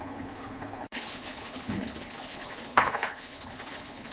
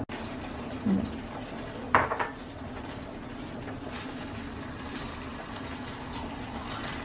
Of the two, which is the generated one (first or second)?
first